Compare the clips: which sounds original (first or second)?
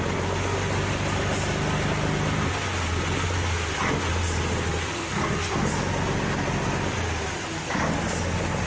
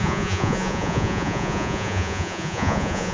first